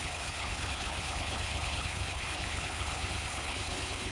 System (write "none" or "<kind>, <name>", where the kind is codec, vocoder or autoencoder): codec, HILCodec